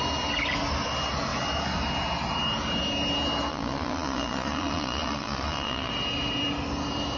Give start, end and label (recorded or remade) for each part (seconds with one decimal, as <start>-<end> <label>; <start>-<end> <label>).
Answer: 0.0-3.5 recorded; 3.5-5.9 remade; 5.9-7.2 recorded